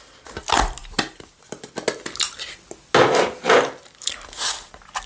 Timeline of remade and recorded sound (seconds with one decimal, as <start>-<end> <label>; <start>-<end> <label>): 0.0-5.1 recorded